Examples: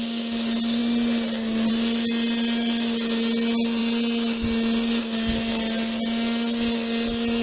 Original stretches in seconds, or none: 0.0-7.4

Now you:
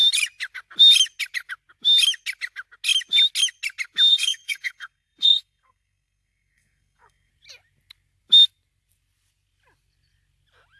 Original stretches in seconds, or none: 0.0-4.1; 7.3-10.8

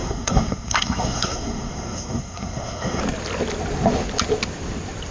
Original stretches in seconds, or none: 3.0-5.1

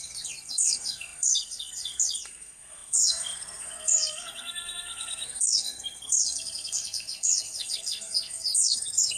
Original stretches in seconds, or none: none